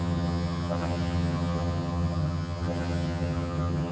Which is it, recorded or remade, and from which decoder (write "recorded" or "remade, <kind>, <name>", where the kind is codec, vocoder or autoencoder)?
remade, vocoder, HiFi-GAN